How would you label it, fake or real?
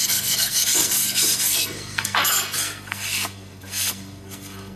fake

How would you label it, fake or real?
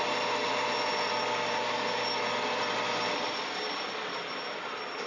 real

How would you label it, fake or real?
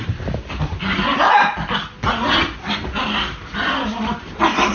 real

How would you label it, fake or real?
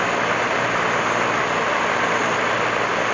real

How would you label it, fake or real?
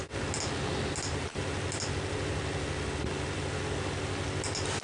real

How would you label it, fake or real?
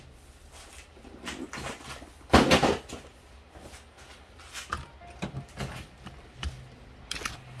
real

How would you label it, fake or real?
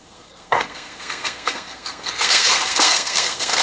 fake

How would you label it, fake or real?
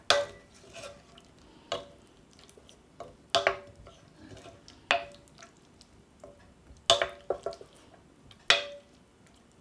real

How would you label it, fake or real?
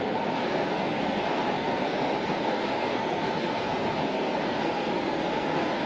fake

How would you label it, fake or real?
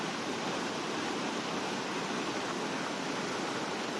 real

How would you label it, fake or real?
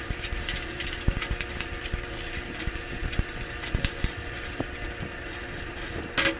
real